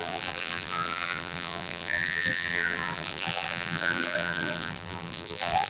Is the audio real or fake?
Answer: fake